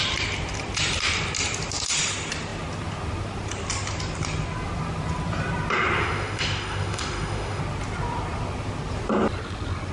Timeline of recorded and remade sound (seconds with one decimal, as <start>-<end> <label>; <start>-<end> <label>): 0.0-6.0 recorded; 6.0-7.6 remade; 7.6-9.9 recorded